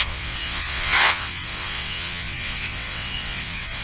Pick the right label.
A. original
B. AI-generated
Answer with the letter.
B